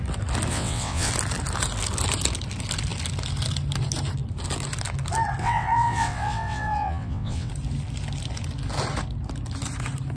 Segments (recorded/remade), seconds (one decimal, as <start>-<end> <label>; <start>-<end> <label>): 0.0-0.5 recorded; 0.5-1.1 remade; 1.1-5.4 recorded; 5.4-7.5 remade; 7.5-10.2 recorded